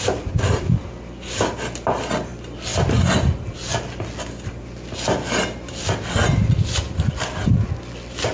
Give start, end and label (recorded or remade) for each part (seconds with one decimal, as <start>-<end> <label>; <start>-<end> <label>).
0.0-8.3 recorded